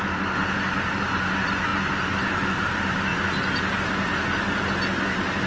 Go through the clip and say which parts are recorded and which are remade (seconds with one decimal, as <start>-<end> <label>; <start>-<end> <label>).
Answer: 0.0-5.5 recorded